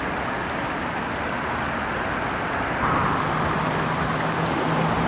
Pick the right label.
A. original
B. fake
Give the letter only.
A